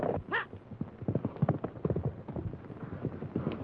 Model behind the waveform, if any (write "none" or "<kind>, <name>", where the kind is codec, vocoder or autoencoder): none